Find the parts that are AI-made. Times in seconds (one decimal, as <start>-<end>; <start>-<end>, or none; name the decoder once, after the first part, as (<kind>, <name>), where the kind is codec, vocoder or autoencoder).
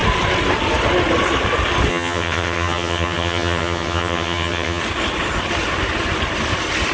1.9-4.8 (vocoder, HiFi-GAN)